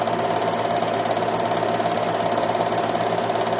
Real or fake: real